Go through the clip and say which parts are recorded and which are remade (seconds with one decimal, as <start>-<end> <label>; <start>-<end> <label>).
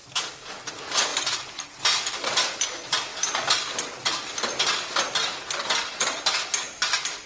0.0-1.1 remade; 1.1-2.1 recorded; 2.1-7.3 remade